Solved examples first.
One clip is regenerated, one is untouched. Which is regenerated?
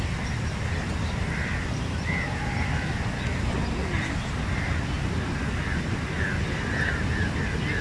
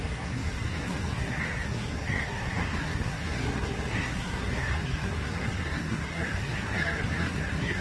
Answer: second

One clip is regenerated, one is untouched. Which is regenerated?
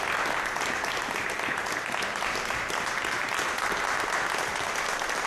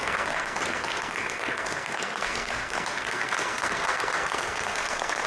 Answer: second